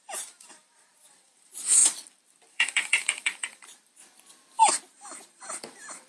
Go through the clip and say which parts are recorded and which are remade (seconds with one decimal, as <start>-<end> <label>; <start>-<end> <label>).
0.0-1.8 remade; 1.8-2.5 recorded; 2.5-4.0 remade; 4.0-4.6 recorded; 4.6-6.1 remade